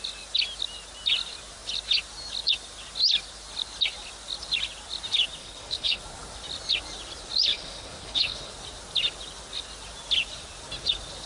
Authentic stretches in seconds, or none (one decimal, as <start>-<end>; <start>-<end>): 0.0-5.4; 6.0-7.5; 8.5-11.3